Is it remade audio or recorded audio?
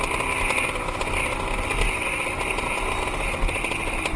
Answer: recorded